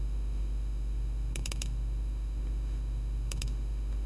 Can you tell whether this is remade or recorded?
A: remade